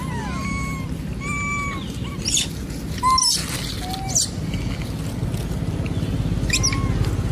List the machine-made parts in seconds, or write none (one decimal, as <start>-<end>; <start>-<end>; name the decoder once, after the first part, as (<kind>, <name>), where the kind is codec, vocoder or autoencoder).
none